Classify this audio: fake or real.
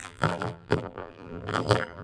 fake